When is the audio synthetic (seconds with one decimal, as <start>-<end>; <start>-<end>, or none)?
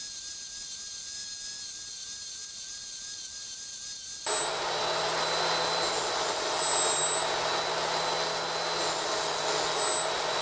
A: none